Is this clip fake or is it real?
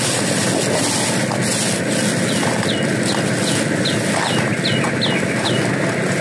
real